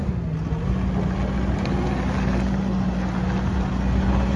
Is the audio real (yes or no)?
yes